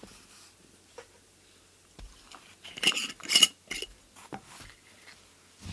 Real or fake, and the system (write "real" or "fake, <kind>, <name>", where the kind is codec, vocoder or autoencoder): real